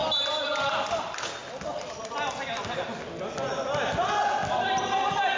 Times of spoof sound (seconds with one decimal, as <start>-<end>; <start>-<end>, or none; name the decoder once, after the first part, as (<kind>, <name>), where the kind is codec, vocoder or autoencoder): none